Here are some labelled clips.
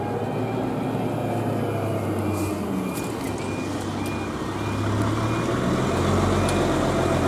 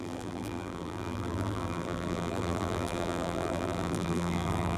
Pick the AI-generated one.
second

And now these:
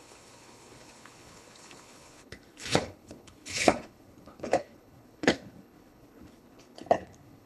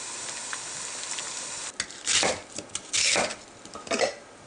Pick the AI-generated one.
first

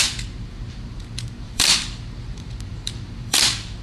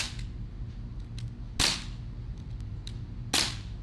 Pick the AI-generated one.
first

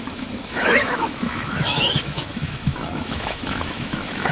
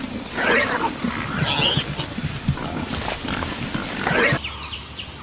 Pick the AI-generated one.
first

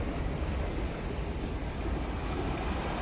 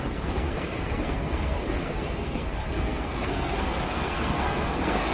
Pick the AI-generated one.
second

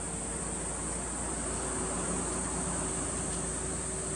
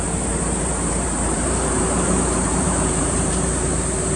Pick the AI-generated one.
second